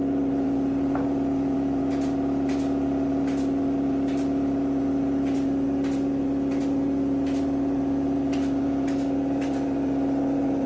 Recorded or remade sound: recorded